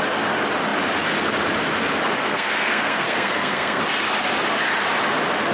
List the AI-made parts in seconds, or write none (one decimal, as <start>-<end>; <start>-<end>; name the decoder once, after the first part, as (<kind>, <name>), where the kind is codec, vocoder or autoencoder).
2.2-3.8 (codec, SNAC)